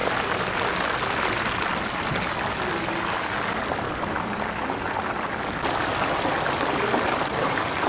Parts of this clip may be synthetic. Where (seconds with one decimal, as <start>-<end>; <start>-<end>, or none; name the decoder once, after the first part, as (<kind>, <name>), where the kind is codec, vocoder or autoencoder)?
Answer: none